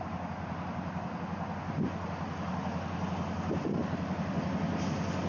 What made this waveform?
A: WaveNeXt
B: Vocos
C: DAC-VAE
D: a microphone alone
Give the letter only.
D